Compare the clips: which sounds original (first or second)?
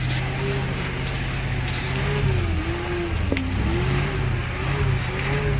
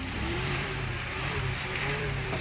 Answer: first